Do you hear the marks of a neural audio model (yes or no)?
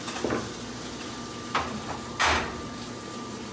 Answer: no